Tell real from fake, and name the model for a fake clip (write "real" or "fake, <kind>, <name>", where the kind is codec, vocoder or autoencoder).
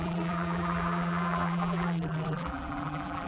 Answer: fake, vocoder, BigVGAN v2